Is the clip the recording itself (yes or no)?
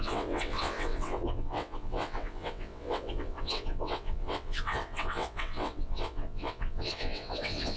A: no